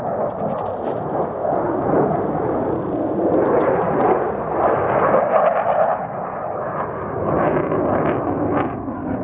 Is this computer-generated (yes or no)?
no